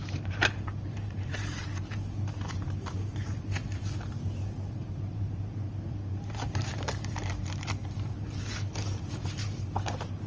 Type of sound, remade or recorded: remade